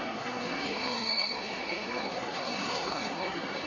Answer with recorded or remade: remade